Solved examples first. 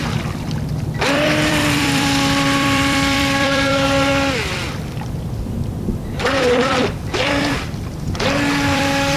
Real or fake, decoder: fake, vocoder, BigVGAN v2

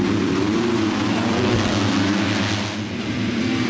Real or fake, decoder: real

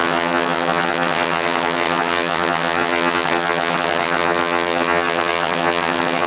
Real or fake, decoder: fake, vocoder, HiFi-GAN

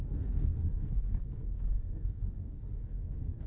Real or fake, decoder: fake, codec, SNAC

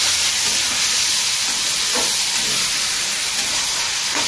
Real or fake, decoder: real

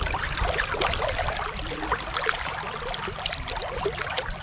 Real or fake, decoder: real